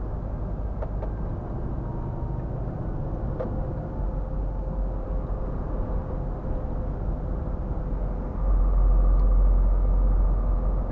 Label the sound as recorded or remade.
recorded